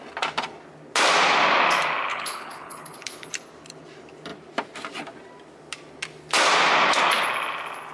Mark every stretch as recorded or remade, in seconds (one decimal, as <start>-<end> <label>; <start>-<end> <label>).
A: 0.0-2.1 recorded; 2.1-3.3 remade; 3.3-7.9 recorded